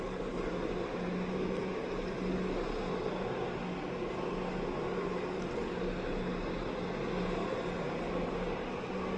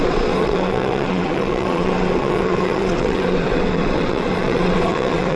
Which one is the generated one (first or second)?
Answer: second